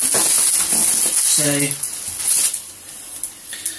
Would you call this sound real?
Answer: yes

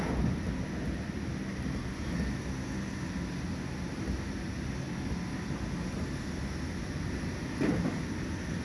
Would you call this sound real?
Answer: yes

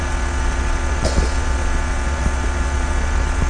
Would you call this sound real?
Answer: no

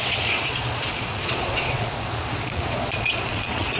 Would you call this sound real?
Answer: no